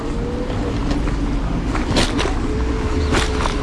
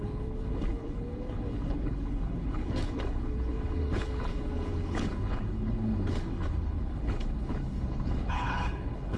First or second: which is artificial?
second